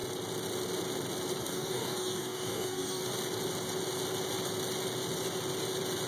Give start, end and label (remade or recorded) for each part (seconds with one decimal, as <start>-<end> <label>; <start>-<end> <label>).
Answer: 0.0-1.4 recorded; 1.4-3.0 remade; 3.0-6.1 recorded